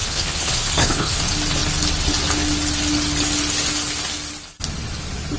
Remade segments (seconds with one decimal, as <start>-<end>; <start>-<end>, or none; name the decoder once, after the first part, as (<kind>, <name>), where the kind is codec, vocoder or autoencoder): 0.0-1.2 (codec, HILCodec)

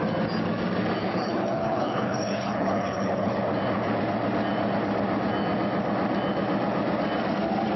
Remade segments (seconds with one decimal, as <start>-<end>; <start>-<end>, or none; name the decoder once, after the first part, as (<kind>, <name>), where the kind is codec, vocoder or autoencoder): 1.0-3.4 (codec, HILCodec)

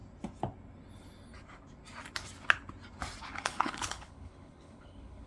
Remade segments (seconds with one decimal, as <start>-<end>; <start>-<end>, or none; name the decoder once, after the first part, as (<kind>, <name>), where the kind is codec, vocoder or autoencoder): 3.2-5.3 (codec, HILCodec)